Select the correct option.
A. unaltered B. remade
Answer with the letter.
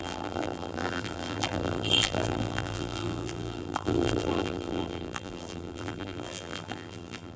B